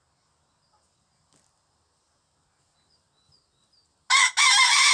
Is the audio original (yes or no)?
yes